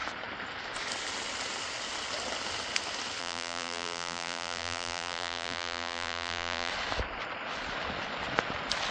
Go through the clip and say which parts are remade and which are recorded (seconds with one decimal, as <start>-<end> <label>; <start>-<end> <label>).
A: 0.0-3.2 recorded; 3.2-6.7 remade; 6.7-8.9 recorded